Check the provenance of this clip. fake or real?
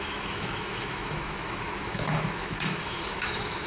fake